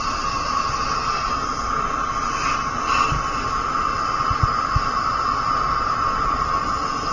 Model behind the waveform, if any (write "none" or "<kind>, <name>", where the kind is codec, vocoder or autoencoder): none